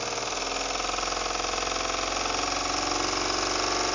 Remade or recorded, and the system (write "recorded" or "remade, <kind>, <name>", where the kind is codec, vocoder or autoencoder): recorded